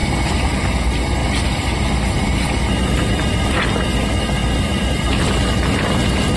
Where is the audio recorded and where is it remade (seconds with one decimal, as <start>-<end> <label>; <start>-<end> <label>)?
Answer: 0.0-0.5 remade; 0.5-1.2 recorded; 1.2-3.9 remade; 3.9-4.4 recorded; 4.4-5.2 remade; 5.2-6.4 recorded